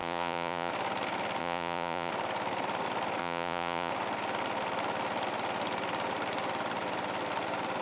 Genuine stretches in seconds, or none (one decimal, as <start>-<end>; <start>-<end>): 0.7-1.4; 2.1-3.2; 3.9-7.8